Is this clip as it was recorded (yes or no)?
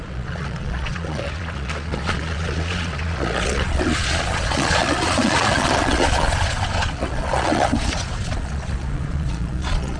no